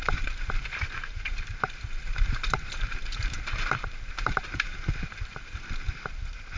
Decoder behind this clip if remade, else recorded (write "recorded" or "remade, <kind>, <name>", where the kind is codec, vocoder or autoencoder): remade, vocoder, BigVGAN v2